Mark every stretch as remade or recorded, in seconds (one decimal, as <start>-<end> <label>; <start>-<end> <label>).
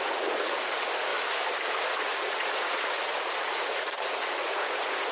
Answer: 0.0-1.1 remade; 1.1-1.9 recorded; 1.9-5.1 remade